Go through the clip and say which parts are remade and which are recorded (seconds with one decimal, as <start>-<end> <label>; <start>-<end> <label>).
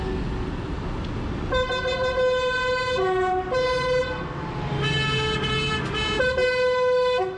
0.0-7.4 recorded